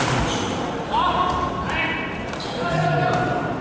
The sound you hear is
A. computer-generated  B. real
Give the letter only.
B